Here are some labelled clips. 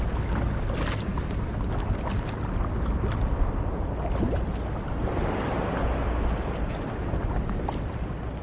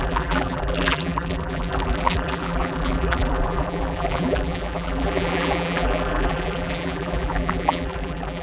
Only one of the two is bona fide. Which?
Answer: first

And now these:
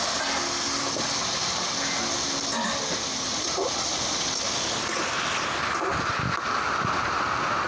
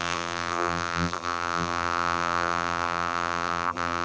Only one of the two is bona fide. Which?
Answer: first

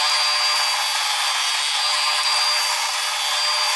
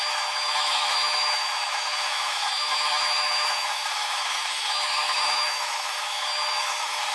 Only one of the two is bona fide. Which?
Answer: first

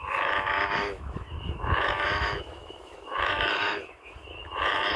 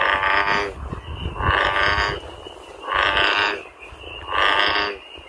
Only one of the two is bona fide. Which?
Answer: second